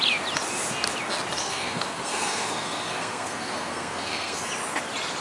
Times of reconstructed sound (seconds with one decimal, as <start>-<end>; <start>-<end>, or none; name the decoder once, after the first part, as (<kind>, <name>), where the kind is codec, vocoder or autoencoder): 1.4-4.5 (codec, SNAC)